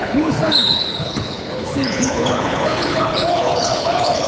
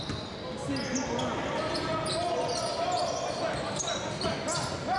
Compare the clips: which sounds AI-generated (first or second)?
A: first